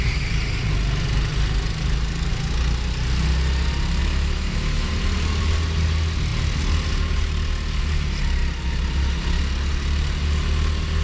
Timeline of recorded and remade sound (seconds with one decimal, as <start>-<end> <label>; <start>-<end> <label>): 0.0-4.0 recorded; 4.0-4.9 remade; 4.9-11.0 recorded